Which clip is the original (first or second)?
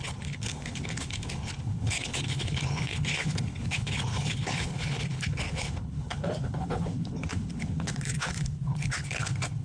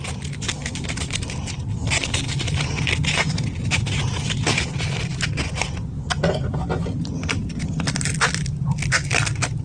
second